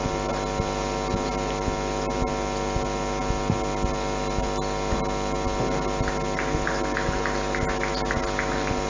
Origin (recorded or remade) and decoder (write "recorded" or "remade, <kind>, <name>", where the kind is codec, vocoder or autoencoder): recorded